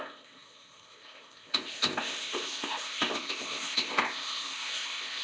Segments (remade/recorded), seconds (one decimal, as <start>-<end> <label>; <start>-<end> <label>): 0.0-5.2 remade